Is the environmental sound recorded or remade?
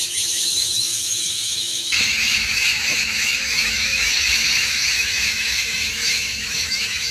remade